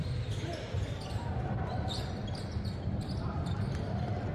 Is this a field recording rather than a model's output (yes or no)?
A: no